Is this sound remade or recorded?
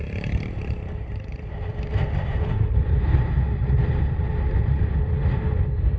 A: remade